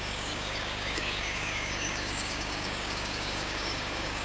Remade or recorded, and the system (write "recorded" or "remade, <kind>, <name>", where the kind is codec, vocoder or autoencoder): remade, codec, DAC